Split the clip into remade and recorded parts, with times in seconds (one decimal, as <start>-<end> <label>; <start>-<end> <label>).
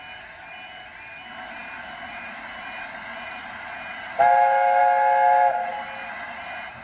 0.0-6.8 recorded